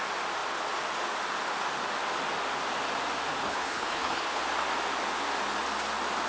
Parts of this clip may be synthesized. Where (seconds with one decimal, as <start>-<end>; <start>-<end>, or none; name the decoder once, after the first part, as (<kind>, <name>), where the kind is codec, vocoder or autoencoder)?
3.4-4.4 (codec, HILCodec)